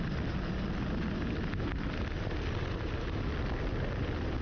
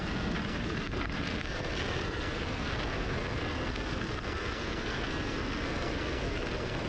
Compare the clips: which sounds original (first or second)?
first